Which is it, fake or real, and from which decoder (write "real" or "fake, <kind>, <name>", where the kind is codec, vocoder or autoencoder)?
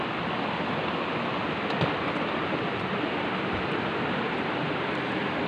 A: fake, vocoder, BigVGAN v2